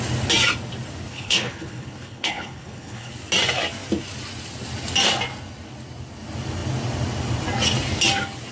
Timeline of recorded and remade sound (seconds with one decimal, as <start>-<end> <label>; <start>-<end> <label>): 0.0-1.1 recorded; 1.1-3.1 remade; 3.1-8.5 recorded